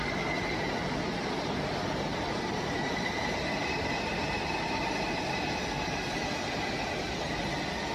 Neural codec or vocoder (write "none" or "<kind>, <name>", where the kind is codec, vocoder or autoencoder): none